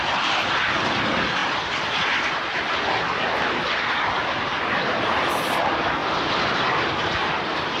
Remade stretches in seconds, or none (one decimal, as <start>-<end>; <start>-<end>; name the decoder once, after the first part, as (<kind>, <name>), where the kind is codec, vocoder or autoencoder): 4.5-5.2 (vocoder, BigVGAN v2); 6.0-7.8